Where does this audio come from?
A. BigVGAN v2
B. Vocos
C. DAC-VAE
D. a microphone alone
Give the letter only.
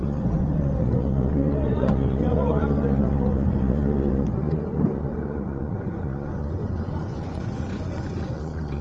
B